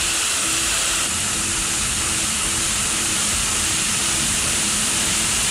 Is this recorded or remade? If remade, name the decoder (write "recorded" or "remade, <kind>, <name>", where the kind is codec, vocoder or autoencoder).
remade, vocoder, BigVGAN v2